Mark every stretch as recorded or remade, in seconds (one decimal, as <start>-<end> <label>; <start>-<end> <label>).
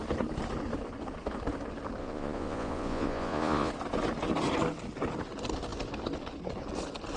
0.0-2.0 recorded; 2.0-3.7 remade; 3.7-7.2 recorded